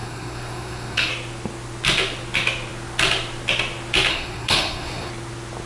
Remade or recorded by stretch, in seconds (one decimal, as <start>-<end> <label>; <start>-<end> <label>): 0.0-1.1 remade; 1.1-4.1 recorded; 4.1-5.1 remade; 5.1-5.7 recorded